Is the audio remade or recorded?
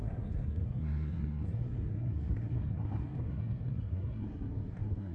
remade